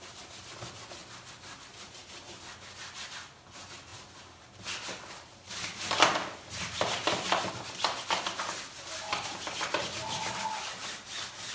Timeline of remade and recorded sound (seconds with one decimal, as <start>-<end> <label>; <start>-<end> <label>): 0.0-11.5 recorded